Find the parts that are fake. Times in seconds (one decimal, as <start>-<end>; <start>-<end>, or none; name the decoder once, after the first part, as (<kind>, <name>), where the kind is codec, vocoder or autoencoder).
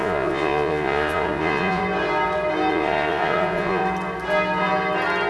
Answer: 0.0-1.8 (vocoder, Vocos); 2.7-3.8